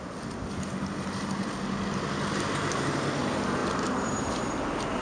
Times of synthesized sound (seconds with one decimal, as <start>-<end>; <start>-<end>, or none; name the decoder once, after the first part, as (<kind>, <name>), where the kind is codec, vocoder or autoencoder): none